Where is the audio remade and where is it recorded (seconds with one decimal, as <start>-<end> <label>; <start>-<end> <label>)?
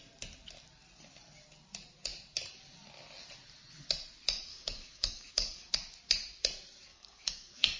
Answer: 0.0-4.5 recorded; 4.5-5.7 remade; 5.7-6.9 recorded; 6.9-7.8 remade